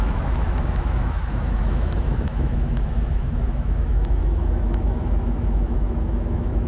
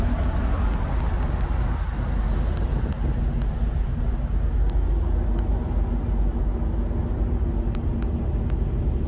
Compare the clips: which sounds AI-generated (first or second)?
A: first